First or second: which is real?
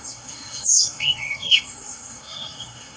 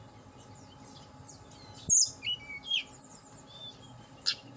second